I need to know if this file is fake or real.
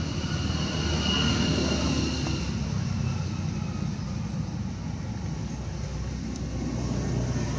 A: real